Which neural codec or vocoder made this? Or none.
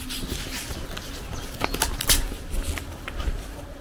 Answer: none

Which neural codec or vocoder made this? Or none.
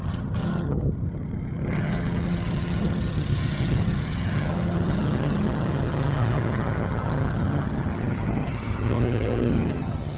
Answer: vocoder, HiFi-GAN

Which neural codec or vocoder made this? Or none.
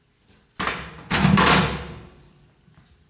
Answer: none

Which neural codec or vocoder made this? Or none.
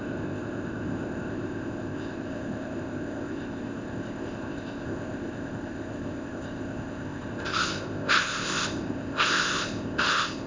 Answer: codec, ZipCodec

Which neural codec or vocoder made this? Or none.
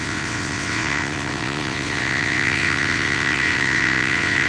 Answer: vocoder, WaveNeXt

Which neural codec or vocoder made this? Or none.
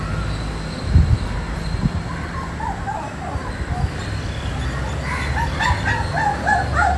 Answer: none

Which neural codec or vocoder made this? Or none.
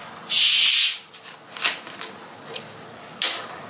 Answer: none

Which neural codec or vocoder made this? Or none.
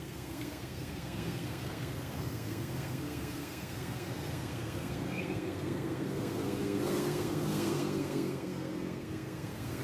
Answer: codec, SNAC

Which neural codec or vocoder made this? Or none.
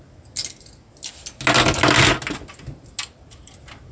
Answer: none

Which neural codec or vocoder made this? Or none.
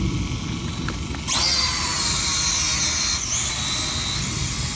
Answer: none